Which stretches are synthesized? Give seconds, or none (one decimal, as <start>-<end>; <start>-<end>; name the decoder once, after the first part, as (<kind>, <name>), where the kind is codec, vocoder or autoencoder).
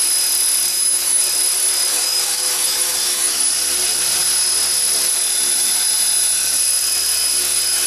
0.7-1.2 (autoencoder, DAC-VAE); 1.9-3.5